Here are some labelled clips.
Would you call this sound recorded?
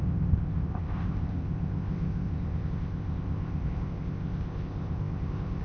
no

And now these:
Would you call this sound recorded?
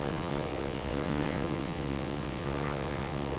no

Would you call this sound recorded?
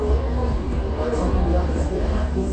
no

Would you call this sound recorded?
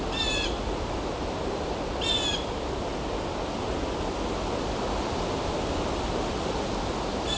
yes